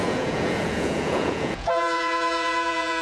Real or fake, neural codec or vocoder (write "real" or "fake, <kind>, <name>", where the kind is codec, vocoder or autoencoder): fake, vocoder, Vocos